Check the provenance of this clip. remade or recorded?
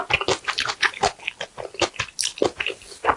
recorded